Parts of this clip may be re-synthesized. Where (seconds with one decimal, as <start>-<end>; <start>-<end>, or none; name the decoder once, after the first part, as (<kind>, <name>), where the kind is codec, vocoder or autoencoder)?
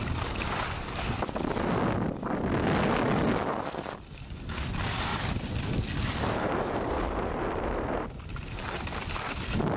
5.1-6.2 (vocoder, BigVGAN v2)